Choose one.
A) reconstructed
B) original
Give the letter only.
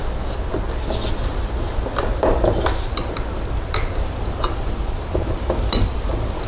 B